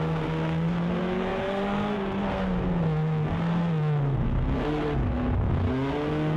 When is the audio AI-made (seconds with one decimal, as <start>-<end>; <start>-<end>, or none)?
0.0-6.4